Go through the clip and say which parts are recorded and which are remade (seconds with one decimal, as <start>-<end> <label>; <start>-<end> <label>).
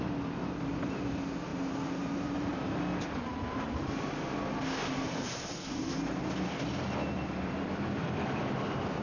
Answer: 0.0-1.5 recorded; 1.5-2.5 remade; 2.5-3.3 recorded; 3.3-4.1 remade; 4.1-4.8 recorded; 4.8-5.4 remade; 5.4-9.0 recorded